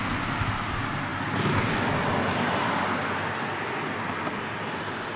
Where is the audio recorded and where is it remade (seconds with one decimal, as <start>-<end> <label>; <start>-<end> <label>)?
0.0-5.2 recorded